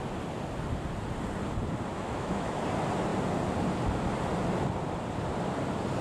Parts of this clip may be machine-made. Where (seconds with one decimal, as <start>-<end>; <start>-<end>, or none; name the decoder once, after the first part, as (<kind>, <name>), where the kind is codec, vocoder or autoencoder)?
1.9-2.6 (autoencoder, DAC-VAE)

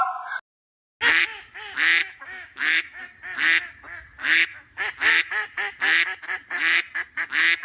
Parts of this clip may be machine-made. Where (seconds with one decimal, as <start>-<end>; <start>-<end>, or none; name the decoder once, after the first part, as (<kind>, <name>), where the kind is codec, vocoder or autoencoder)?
2.0-3.0 (autoencoder, DAC-VAE); 4.2-4.8

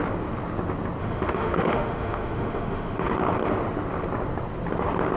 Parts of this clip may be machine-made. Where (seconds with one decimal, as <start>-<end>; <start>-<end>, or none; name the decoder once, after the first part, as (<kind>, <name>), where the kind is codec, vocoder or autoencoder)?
1.0-3.1 (autoencoder, DAC-VAE)

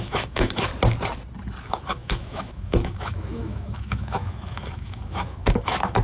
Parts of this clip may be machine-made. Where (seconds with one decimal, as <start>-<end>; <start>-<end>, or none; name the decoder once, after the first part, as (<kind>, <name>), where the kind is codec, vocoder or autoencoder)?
0.0-0.7 (autoencoder, DAC-VAE); 1.6-6.0

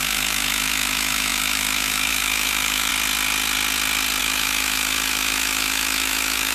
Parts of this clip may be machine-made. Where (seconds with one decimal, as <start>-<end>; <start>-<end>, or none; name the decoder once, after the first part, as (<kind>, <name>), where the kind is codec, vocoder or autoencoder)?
0.0-2.9 (autoencoder, DAC-VAE); 4.2-6.5